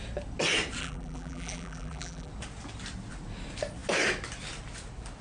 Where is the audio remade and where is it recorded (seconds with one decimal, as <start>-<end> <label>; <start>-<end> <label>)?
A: 0.0-0.8 recorded; 0.8-2.3 remade; 2.3-5.2 recorded